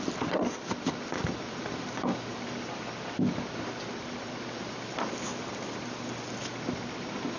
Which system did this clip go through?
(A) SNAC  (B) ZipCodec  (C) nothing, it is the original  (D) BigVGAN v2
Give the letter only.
C